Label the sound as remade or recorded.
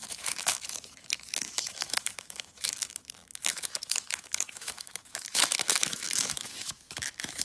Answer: remade